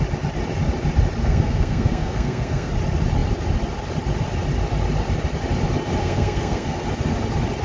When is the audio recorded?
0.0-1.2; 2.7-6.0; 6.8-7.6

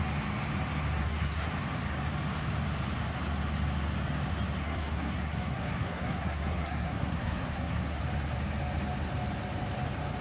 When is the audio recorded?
0.0-1.0; 1.5-4.6; 8.0-10.2

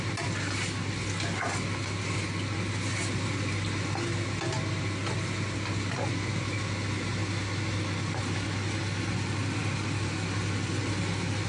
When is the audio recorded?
0.0-11.5

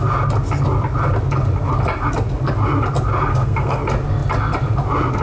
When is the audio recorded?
0.0-3.3; 3.8-5.2

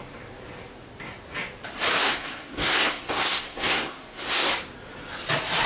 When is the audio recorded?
0.0-2.0; 4.5-5.7

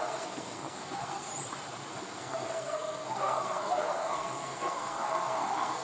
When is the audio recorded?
1.3-1.9